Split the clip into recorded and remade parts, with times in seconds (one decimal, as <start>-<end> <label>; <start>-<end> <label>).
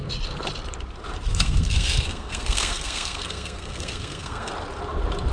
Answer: 0.0-1.3 recorded; 1.3-4.5 remade; 4.5-5.3 recorded